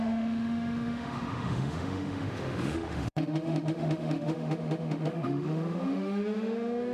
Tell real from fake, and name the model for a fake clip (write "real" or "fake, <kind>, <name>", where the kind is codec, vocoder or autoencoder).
fake, autoencoder, DAC-VAE